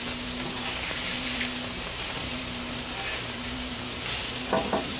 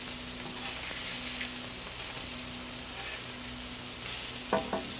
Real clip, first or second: second